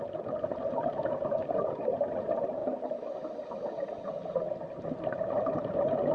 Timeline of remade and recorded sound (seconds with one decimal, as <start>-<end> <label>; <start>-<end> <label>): 0.0-6.1 recorded